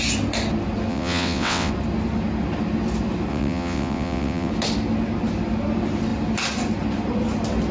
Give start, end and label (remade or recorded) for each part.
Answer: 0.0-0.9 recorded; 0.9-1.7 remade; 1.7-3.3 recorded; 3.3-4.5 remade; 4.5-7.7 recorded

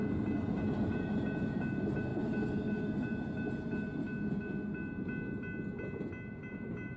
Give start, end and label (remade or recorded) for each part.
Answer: 0.0-0.5 recorded; 0.5-2.1 remade; 2.1-6.3 recorded; 6.3-7.0 remade

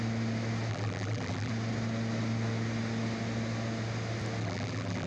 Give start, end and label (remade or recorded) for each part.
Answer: 0.0-0.7 recorded; 0.7-1.5 remade; 1.5-4.4 recorded; 4.4-5.1 remade

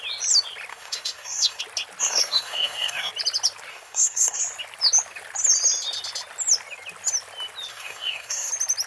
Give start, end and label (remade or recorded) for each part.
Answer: 0.0-0.7 recorded; 0.7-1.6 remade; 1.6-2.0 recorded; 2.0-3.1 remade; 3.1-3.7 recorded; 3.7-4.4 remade; 4.4-7.7 recorded; 7.7-8.5 remade; 8.5-8.9 recorded